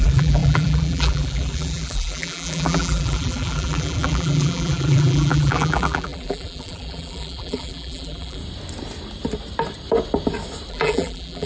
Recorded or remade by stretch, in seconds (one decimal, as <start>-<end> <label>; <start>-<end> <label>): 0.0-8.4 remade; 8.4-10.7 recorded; 10.7-11.5 remade